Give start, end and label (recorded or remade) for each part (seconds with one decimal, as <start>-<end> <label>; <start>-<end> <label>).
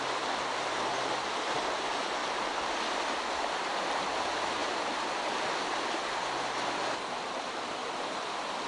0.0-8.7 recorded